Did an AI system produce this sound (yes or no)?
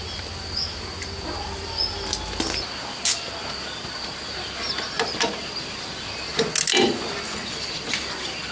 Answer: no